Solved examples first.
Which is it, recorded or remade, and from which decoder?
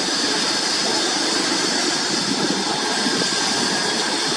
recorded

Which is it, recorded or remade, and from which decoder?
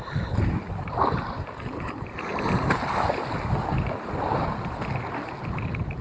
recorded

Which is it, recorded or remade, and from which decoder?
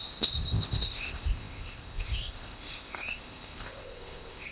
remade, codec, ZipCodec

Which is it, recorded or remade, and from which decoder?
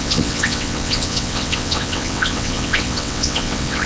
remade, vocoder, WaveNeXt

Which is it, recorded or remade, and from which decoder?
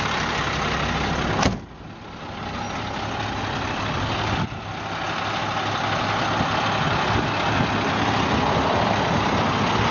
recorded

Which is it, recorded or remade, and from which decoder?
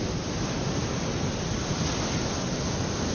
recorded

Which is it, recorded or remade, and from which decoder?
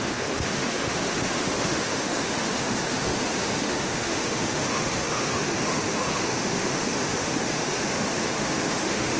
remade, autoencoder, DAC-VAE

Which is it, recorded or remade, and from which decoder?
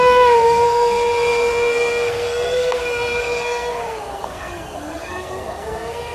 remade, codec, SNAC